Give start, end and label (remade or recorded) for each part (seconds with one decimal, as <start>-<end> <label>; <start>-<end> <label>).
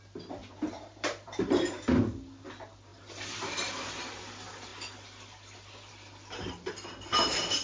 0.0-0.4 recorded; 0.4-2.0 remade; 2.0-7.6 recorded